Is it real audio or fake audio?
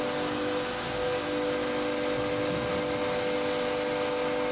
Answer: real